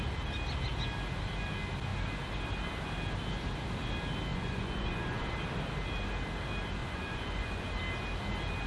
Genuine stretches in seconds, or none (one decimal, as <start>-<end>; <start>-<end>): 0.0-4.3; 5.3-6.8; 7.7-8.7